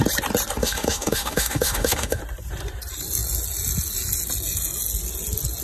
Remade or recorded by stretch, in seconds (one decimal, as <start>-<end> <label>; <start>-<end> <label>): 0.0-0.6 recorded; 0.6-2.2 remade; 2.2-5.6 recorded